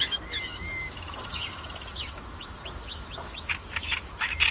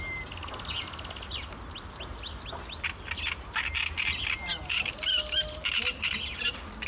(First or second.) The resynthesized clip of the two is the first